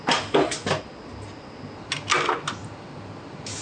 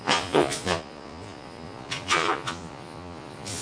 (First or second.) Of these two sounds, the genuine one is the first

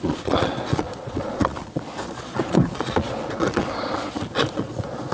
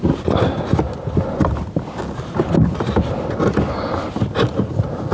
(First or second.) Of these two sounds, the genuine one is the second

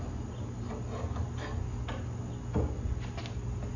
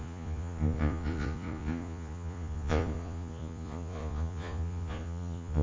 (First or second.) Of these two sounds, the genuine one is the first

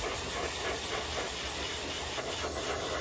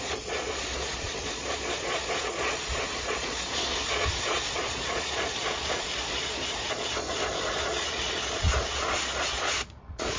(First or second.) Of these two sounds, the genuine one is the first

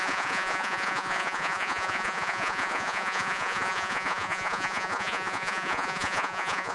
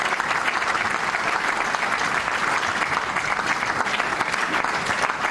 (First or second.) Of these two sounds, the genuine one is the second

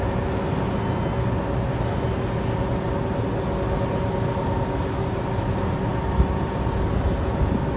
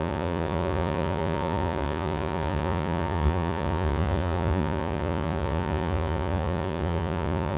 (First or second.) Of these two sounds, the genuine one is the first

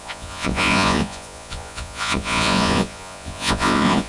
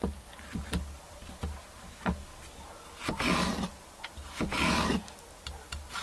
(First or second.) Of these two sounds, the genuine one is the second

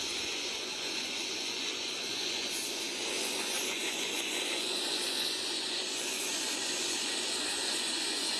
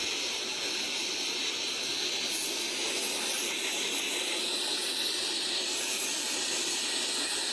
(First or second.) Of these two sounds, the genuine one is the second